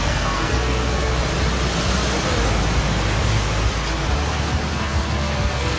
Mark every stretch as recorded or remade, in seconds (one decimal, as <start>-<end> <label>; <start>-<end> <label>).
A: 0.0-1.2 remade; 1.2-4.7 recorded; 4.7-5.8 remade